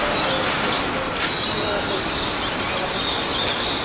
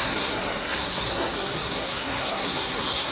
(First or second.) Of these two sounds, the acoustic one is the first